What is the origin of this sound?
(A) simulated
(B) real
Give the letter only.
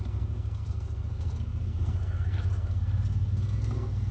A